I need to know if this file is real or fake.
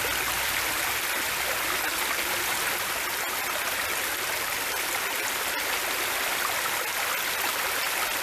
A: real